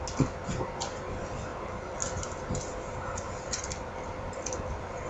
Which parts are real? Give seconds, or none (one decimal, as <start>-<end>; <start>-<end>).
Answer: 0.0-5.1